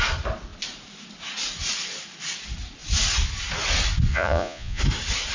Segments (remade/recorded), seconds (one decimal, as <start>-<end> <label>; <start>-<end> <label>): 0.0-4.1 recorded; 4.1-4.8 remade; 4.8-5.3 recorded